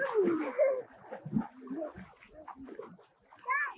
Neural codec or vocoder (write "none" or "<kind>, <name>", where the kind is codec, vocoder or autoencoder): none